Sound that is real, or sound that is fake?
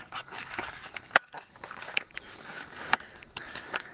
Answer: fake